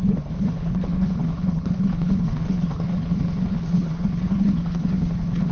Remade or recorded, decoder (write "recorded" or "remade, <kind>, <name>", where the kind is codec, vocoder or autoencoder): remade, codec, HILCodec